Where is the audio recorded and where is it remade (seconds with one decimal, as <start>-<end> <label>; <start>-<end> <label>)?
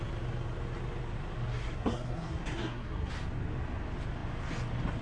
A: 0.0-1.5 recorded; 1.5-3.1 remade; 3.1-5.0 recorded